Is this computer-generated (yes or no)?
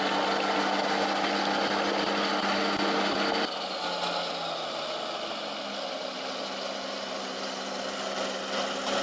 no